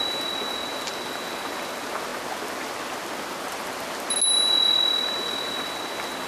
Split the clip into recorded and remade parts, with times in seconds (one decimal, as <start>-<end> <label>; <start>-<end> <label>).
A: 0.0-6.3 recorded